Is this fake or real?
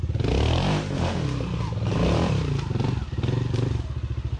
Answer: real